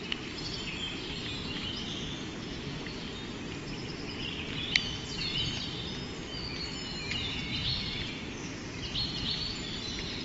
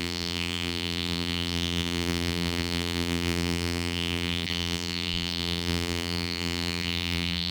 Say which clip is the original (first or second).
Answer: first